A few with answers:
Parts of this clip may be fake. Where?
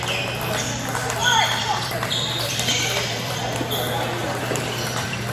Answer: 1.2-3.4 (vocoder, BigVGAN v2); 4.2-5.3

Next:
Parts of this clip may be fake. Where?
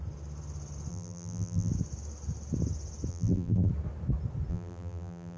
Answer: 0.9-1.7 (vocoder, BigVGAN v2); 3.1-3.7; 4.5-5.4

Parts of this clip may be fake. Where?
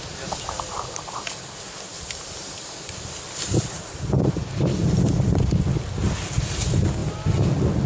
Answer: none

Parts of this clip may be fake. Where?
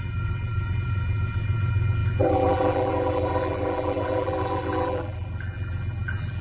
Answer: 0.0-6.4 (vocoder, BigVGAN v2)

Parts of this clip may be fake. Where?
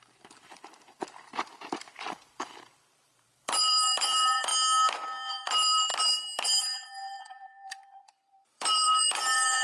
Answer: 0.0-4.5 (vocoder, BigVGAN v2); 5.3-5.9; 6.6-9.6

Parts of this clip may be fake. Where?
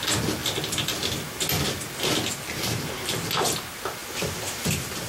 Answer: 4.0-5.1 (vocoder, BigVGAN v2)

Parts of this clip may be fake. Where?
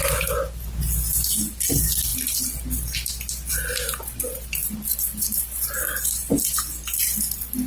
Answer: none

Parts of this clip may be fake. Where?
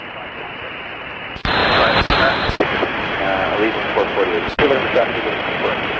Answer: 0.0-1.6 (vocoder, BigVGAN v2); 4.3-6.0